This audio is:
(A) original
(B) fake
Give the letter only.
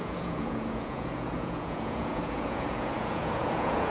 B